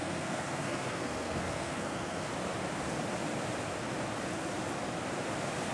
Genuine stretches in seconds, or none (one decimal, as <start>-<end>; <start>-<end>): 2.3-5.7